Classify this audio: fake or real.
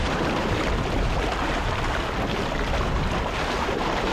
real